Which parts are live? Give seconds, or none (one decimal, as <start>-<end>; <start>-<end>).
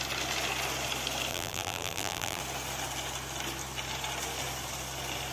0.0-1.3; 2.4-5.3